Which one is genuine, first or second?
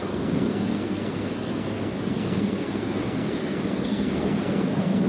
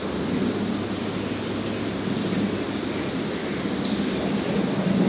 second